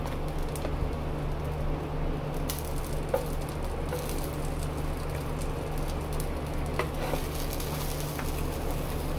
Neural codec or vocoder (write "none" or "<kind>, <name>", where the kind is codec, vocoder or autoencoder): none